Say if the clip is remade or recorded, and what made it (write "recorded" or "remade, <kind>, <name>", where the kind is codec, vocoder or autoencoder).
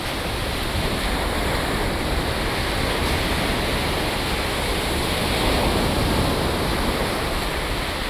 recorded